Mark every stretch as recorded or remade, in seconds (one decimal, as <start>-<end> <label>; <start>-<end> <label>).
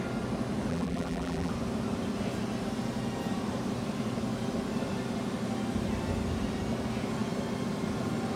0.0-0.7 recorded; 0.7-1.5 remade; 1.5-8.4 recorded